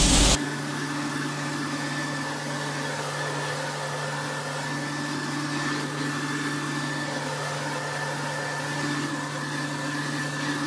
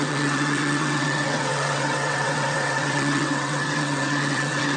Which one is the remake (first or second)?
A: second